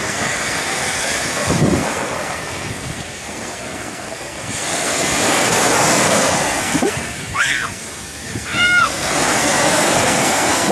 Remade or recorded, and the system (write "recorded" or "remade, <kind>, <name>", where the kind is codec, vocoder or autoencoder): remade, codec, SNAC